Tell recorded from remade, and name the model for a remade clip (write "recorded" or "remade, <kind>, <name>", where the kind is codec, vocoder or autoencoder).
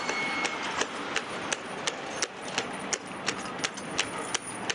recorded